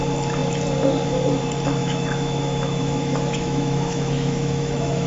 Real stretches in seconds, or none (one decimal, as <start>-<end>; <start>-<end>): 0.0-1.8

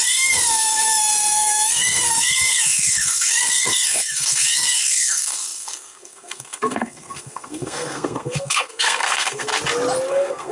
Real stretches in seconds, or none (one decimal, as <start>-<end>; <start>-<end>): 9.5-10.1